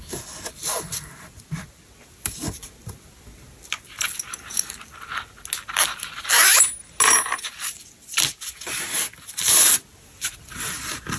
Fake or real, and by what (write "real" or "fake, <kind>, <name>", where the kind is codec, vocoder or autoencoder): real